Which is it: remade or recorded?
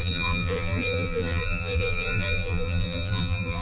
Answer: remade